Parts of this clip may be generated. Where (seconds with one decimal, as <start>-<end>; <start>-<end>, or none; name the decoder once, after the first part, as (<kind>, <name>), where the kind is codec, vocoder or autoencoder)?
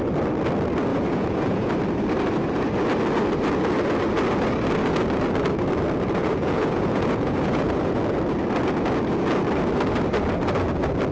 0.9-1.7 (vocoder, Vocos); 6.2-8.0